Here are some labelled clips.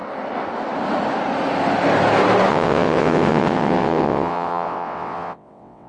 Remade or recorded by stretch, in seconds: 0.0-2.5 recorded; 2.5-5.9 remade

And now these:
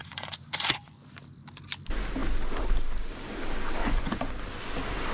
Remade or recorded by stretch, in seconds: 0.0-1.1 remade; 1.1-3.8 recorded; 3.8-4.3 remade; 4.3-5.1 recorded

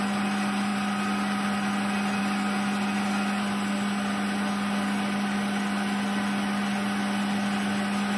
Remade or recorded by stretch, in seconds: 0.0-8.2 recorded

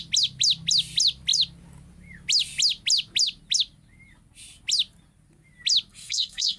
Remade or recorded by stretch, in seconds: 0.0-5.9 recorded; 5.9-6.6 remade

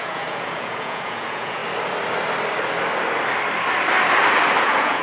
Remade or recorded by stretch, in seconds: 0.0-1.6 remade; 1.6-4.6 recorded; 4.6-5.0 remade

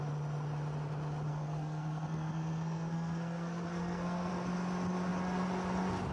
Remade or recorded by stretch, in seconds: 0.0-1.3 recorded; 1.3-4.3 remade; 4.3-6.1 recorded